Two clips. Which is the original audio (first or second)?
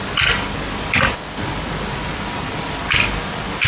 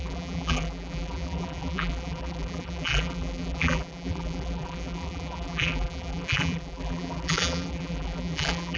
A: first